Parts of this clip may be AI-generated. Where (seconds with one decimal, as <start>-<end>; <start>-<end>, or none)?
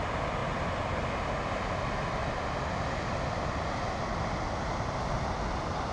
none